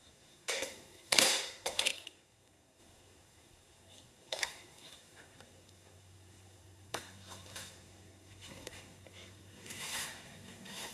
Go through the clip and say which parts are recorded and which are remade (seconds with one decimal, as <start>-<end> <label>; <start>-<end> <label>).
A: 0.0-10.9 remade